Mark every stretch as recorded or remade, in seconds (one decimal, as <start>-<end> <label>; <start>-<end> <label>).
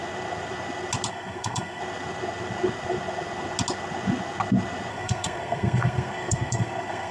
0.0-1.1 recorded; 1.1-1.8 remade; 1.8-4.9 recorded; 4.9-7.1 remade